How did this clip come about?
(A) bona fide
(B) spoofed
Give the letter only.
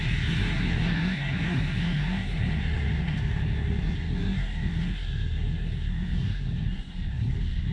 B